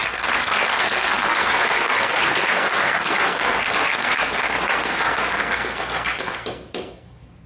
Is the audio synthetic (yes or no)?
yes